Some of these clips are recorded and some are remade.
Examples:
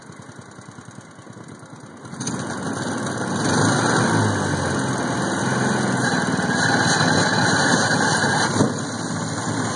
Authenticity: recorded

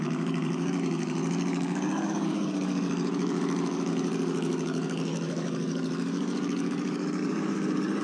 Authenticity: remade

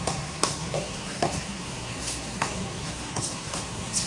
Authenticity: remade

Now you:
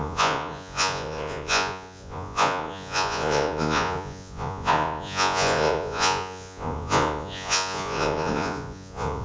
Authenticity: remade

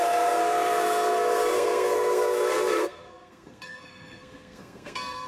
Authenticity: remade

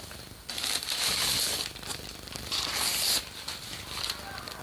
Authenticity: recorded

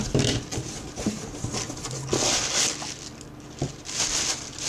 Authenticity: recorded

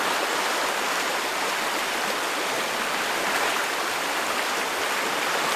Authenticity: recorded